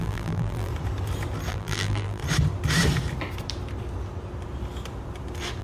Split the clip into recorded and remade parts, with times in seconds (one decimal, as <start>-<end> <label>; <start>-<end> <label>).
0.0-0.7 remade; 0.7-1.5 recorded; 1.5-2.2 remade; 2.2-5.6 recorded

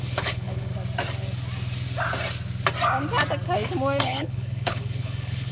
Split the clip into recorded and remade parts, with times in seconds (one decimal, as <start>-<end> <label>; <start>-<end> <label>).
0.0-0.7 remade; 0.7-4.0 recorded; 4.0-5.5 remade

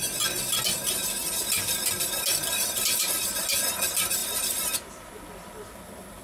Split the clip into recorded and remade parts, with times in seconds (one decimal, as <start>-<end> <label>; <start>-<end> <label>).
0.0-1.2 recorded; 1.2-3.7 remade; 3.7-4.2 recorded; 4.2-5.2 remade; 5.2-6.2 recorded

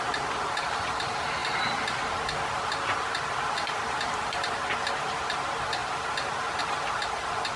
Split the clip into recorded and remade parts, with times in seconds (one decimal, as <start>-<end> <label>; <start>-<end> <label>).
0.0-7.6 recorded